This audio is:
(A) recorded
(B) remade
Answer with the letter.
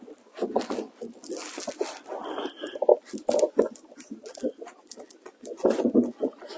A